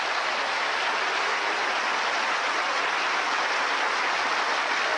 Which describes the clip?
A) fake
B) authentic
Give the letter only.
A